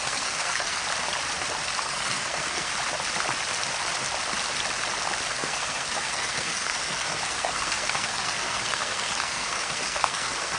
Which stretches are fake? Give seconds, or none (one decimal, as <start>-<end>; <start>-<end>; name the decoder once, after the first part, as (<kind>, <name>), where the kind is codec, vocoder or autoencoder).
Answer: 0.0-0.8 (codec, SNAC); 1.8-2.7; 5.3-10.6